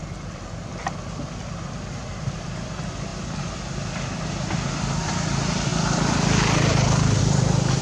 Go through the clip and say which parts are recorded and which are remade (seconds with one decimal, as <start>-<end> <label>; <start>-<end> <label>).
0.0-7.8 remade